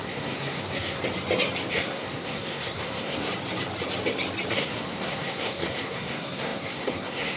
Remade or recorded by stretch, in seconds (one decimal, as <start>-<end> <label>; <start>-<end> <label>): 0.0-1.0 remade; 1.0-1.7 recorded; 1.7-3.3 remade; 3.3-4.5 recorded; 4.5-7.4 remade